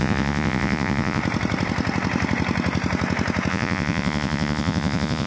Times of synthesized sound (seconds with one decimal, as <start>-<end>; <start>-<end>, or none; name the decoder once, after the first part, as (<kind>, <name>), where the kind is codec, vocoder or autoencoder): 0.0-1.2 (vocoder, Vocos); 3.5-5.3